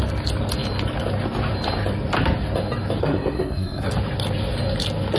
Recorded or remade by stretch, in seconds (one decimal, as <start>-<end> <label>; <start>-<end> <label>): 0.0-3.0 recorded; 3.0-3.9 remade; 3.9-5.2 recorded